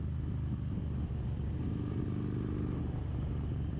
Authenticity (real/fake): real